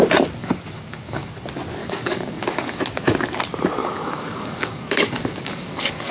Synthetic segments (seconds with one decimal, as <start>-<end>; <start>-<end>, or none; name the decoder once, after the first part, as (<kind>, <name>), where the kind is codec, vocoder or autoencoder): 0.4-1.3 (codec, DAC); 1.8-2.8; 3.8-6.1